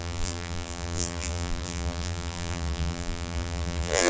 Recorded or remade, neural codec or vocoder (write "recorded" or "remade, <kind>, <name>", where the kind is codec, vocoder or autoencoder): remade, vocoder, BigVGAN v2